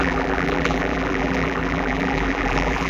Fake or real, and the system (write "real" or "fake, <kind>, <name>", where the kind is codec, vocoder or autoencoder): fake, vocoder, BigVGAN v2